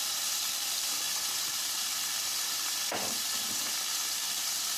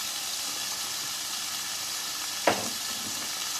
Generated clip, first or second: first